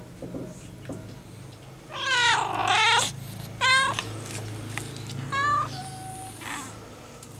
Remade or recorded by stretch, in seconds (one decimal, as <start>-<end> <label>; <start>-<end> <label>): 0.0-7.4 recorded